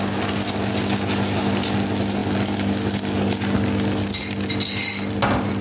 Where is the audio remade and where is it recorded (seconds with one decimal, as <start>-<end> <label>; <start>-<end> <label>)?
0.0-5.6 recorded